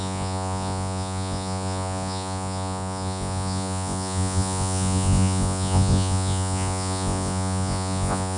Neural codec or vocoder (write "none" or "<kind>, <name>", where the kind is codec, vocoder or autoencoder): vocoder, Vocos